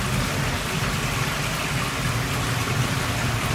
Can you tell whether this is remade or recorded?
recorded